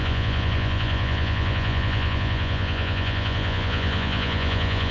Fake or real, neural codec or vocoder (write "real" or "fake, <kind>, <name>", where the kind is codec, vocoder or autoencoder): fake, vocoder, Vocos